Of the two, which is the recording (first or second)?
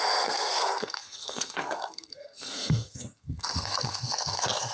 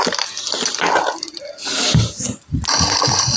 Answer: second